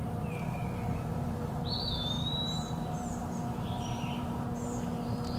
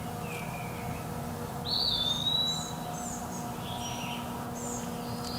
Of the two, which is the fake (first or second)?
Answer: first